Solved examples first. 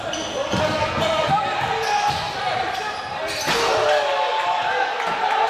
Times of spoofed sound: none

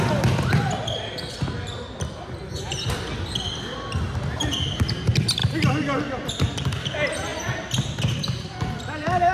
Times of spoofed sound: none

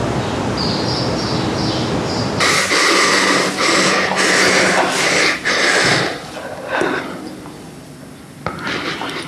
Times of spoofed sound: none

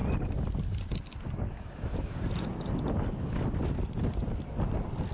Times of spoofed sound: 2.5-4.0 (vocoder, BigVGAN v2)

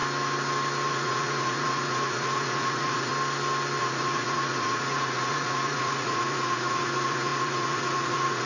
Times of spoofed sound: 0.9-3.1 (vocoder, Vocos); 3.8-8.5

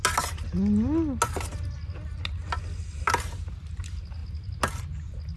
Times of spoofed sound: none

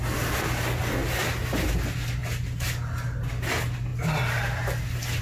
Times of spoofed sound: none

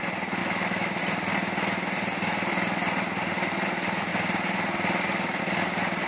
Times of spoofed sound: 0.4-1.0 (autoencoder, DAC-VAE)